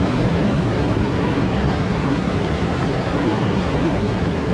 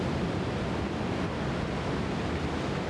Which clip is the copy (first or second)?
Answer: first